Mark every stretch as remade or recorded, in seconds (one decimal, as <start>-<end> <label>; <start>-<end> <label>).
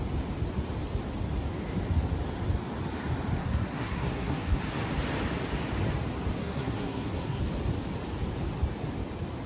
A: 0.0-3.4 recorded; 3.4-4.6 remade; 4.6-6.4 recorded; 6.4-7.4 remade; 7.4-9.5 recorded